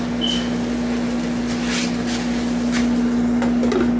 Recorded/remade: recorded